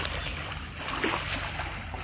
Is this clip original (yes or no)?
yes